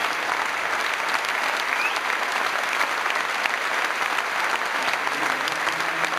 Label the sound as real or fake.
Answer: real